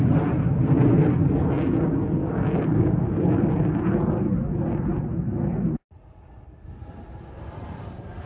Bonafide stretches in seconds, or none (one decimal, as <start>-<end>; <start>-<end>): 0.0-2.2; 3.5-8.3